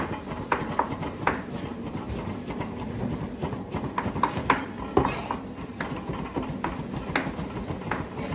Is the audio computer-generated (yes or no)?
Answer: no